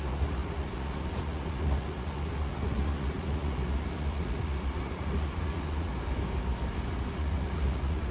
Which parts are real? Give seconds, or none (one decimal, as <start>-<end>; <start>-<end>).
5.9-7.1

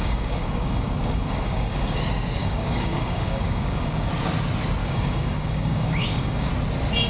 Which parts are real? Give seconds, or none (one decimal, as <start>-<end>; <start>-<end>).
2.0-2.4; 4.1-4.8; 6.5-7.1